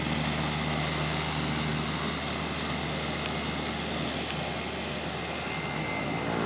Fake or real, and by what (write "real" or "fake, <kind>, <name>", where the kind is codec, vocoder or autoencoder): real